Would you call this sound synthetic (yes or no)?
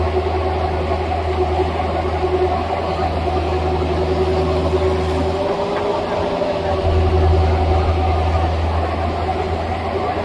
no